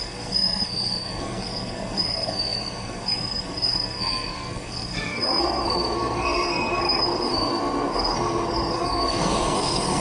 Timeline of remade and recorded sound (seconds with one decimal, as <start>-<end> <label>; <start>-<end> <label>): 0.0-10.0 remade